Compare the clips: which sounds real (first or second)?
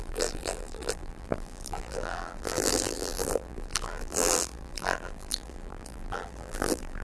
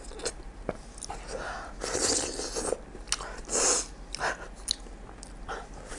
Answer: second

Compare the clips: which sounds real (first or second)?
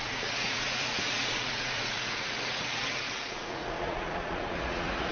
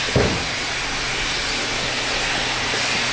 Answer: second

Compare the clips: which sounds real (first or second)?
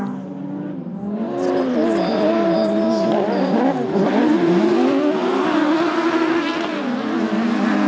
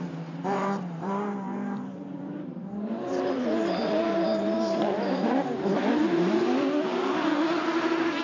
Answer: first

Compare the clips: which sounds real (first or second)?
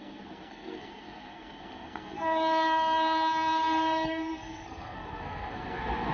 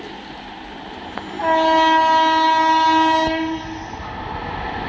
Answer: second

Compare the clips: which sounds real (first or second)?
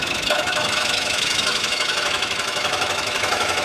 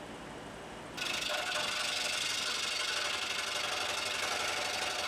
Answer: second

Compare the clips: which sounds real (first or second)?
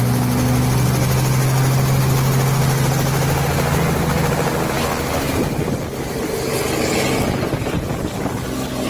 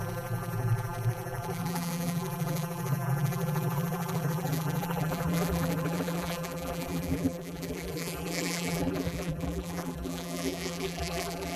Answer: first